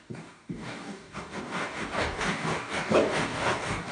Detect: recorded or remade remade